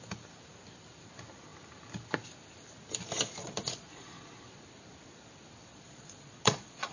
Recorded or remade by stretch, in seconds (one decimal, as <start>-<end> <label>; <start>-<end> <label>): 0.0-3.4 recorded; 3.4-4.3 remade; 4.3-5.7 recorded; 5.7-6.9 remade